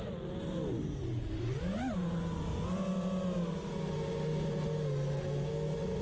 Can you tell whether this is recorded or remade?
recorded